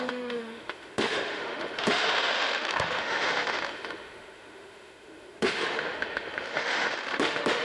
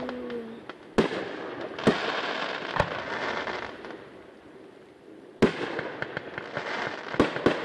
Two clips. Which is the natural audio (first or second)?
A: second